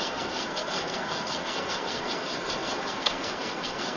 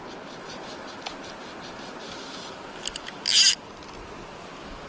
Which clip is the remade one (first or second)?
first